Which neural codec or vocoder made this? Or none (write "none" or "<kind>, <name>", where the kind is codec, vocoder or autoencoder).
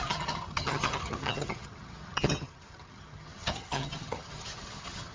vocoder, HiFi-GAN